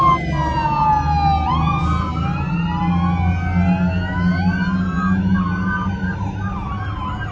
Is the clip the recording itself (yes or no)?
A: yes